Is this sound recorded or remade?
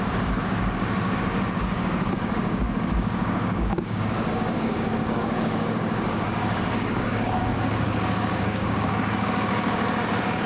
remade